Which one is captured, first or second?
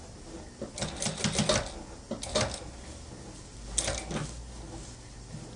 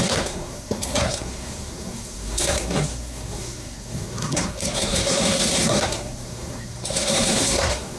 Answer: first